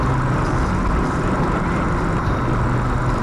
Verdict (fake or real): real